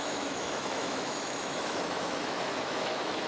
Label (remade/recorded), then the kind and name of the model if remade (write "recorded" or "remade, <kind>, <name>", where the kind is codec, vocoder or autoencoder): remade, autoencoder, DAC-VAE